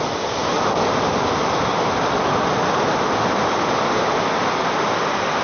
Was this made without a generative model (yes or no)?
yes